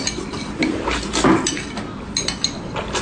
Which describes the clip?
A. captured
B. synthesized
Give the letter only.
A